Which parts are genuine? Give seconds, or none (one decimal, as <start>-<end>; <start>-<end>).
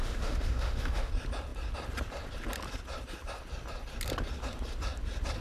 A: 1.1-5.4